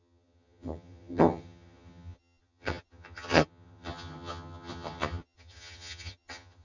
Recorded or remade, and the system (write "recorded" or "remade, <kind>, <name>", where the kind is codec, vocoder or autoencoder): remade, vocoder, HiFi-GAN